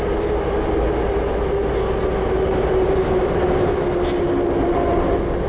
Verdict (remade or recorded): recorded